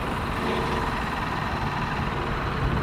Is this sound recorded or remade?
remade